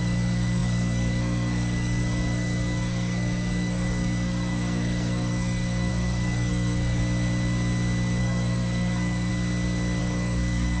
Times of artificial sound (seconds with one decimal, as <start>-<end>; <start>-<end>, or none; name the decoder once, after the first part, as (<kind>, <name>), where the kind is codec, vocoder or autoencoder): 0.0-7.0 (codec, SNAC); 8.2-9.3; 10.0-10.8